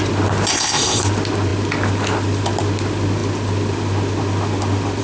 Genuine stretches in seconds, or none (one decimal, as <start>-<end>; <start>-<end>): 0.0-0.5; 1.0-5.0